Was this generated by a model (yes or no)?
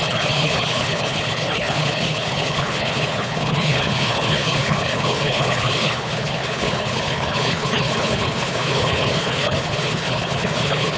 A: yes